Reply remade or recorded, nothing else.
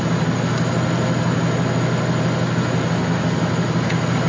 recorded